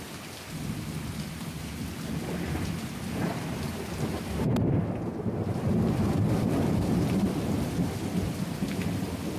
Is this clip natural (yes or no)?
no